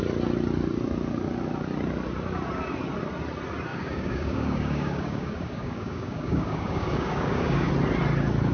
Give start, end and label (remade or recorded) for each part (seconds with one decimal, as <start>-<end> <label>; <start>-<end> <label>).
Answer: 0.0-3.7 recorded; 3.7-7.7 remade; 7.7-8.5 recorded